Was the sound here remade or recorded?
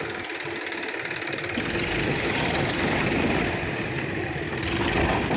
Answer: remade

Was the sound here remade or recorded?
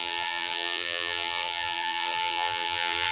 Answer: remade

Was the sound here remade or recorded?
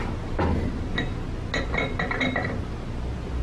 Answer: recorded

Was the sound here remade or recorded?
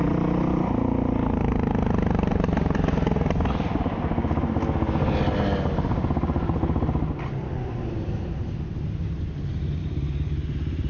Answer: recorded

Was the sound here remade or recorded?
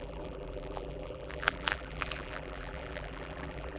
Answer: remade